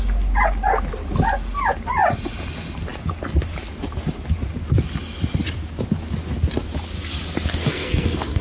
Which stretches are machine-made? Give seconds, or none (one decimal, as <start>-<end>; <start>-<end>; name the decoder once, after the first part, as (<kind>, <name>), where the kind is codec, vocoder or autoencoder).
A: 7.6-8.4 (codec, SNAC)